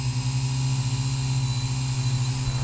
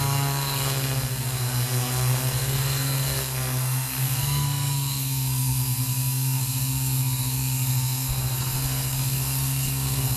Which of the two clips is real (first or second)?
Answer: first